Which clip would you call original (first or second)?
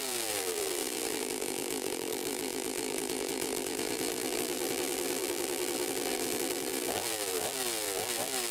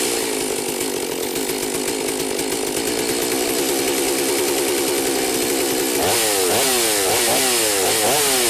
second